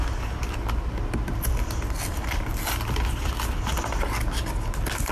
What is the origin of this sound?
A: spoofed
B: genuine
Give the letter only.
B